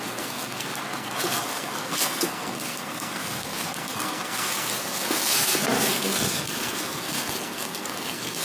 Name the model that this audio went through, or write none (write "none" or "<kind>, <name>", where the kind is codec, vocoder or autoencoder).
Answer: codec, SNAC